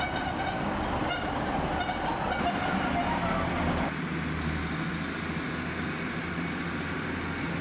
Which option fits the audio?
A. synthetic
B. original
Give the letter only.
B